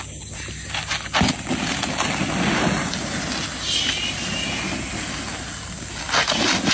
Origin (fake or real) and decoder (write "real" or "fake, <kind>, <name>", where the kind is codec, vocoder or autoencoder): real